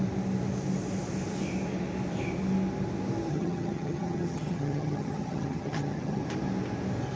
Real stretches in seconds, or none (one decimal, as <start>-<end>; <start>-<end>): 0.0-3.3; 6.2-7.2